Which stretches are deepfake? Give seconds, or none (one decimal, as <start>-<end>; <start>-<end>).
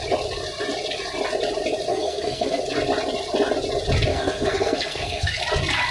1.9-2.6; 4.1-5.4